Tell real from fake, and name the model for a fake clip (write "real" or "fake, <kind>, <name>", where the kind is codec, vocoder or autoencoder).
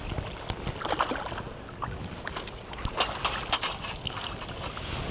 real